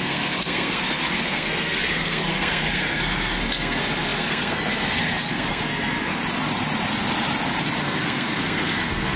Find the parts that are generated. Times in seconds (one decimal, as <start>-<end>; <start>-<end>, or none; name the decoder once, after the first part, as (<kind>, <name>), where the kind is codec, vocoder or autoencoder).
0.0-6.2 (codec, SNAC); 7.8-9.2